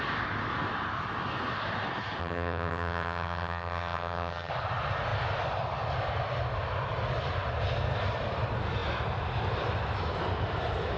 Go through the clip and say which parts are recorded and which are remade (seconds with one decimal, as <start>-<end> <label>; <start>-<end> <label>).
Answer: 0.0-2.2 recorded; 2.2-4.5 remade; 4.5-11.0 recorded